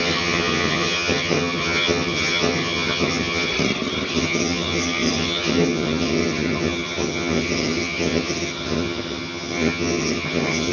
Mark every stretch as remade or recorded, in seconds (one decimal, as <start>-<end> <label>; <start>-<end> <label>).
0.0-3.5 remade; 3.5-4.1 recorded; 4.1-10.7 remade